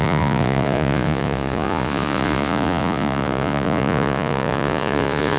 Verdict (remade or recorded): remade